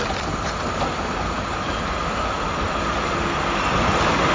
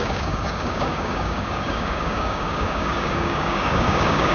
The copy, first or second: second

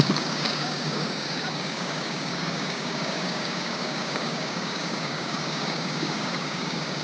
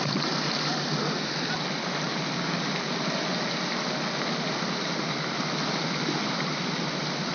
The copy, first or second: first